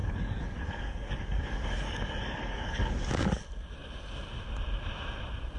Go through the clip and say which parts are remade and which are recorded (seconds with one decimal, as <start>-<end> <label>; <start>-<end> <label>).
0.0-3.4 remade; 3.4-5.6 recorded

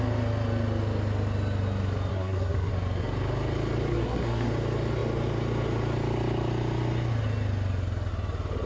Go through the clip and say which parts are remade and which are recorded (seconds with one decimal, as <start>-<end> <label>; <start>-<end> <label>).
0.0-2.1 recorded; 2.1-2.7 remade; 2.7-3.9 recorded; 3.9-4.5 remade; 4.5-8.7 recorded

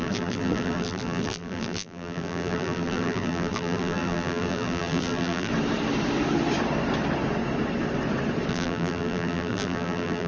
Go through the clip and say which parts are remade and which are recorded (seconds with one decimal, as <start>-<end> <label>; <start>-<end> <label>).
0.0-5.5 remade; 5.5-8.5 recorded; 8.5-10.3 remade

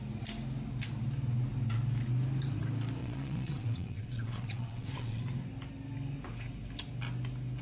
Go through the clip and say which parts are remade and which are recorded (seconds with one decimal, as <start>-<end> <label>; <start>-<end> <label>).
0.0-3.0 recorded; 3.0-5.2 remade; 5.2-7.6 recorded

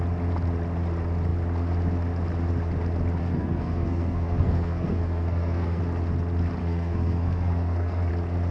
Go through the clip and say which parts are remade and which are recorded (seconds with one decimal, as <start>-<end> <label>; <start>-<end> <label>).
0.0-3.2 recorded; 3.2-5.8 remade; 5.8-6.6 recorded; 6.6-8.1 remade; 8.1-8.5 recorded